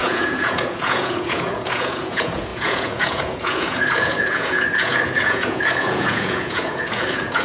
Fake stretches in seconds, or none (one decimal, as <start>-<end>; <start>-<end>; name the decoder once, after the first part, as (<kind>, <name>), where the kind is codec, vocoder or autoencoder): 0.0-7.4 (vocoder, Vocos)